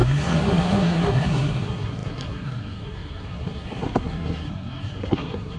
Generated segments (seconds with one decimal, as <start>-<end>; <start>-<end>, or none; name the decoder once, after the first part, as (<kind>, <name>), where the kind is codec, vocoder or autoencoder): 0.0-5.6 (codec, SNAC)